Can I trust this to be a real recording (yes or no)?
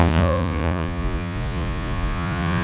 no